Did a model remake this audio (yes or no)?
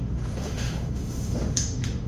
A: yes